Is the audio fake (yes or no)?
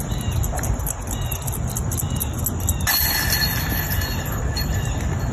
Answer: no